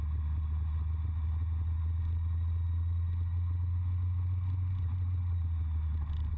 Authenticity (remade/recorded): recorded